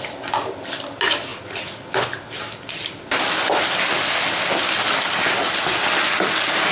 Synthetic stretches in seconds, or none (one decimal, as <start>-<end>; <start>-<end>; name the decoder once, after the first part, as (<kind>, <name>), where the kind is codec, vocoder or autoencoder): none